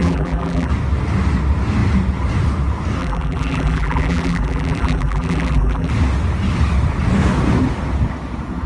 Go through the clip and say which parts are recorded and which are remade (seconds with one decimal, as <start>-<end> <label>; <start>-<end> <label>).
0.0-0.7 remade; 0.7-3.0 recorded; 3.0-5.9 remade; 5.9-8.7 recorded